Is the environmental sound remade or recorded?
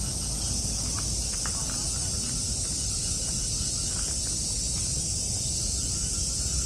recorded